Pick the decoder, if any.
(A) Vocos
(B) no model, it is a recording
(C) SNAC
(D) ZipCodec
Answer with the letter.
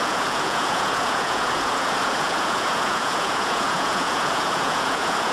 A